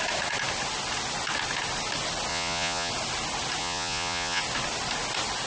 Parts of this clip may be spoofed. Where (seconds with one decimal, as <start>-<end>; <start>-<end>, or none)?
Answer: 2.3-2.9; 3.6-4.4